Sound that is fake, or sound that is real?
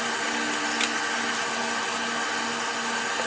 real